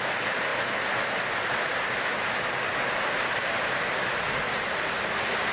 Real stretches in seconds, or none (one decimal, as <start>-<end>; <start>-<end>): 0.0-5.5